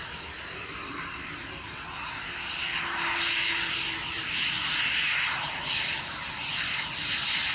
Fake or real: real